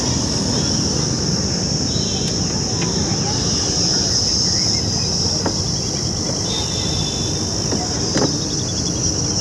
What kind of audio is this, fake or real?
real